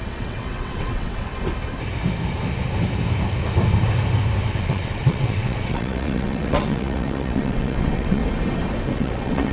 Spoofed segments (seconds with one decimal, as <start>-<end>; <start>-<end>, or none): 0.0-1.3; 4.5-8.2; 8.8-9.5